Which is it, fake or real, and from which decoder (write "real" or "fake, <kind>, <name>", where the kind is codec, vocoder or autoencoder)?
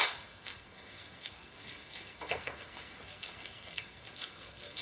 fake, codec, SNAC